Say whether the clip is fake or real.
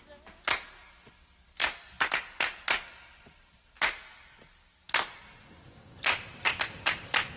real